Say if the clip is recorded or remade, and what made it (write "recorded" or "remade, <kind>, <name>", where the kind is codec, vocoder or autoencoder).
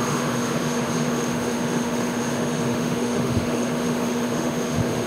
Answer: remade, autoencoder, DAC-VAE